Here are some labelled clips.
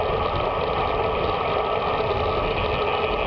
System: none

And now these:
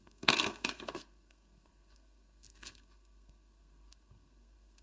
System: codec, SNAC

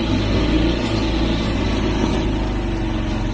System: none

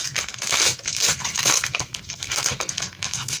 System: codec, SNAC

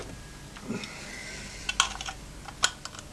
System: none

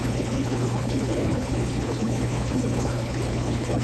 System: codec, HILCodec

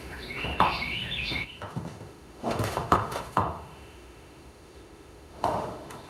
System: autoencoder, DAC-VAE